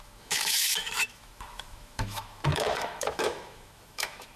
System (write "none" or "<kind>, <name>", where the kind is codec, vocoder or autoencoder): autoencoder, DAC-VAE